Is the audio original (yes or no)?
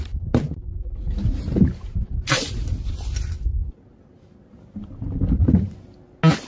yes